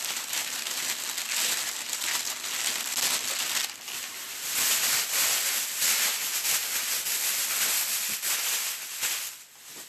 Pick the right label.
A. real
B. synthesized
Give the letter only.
A